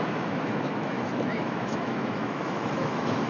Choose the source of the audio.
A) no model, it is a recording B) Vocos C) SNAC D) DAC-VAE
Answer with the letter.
D